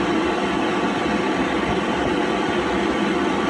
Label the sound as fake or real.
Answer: real